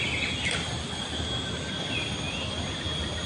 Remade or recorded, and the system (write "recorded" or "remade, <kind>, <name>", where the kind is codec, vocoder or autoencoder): recorded